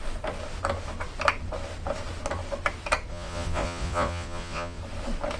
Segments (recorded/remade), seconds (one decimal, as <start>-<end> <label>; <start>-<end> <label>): 0.0-3.1 recorded; 3.1-4.8 remade; 4.8-5.4 recorded